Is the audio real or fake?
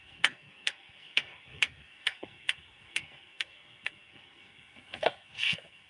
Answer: fake